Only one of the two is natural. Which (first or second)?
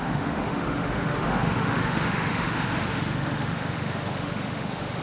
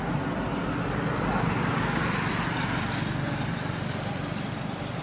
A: second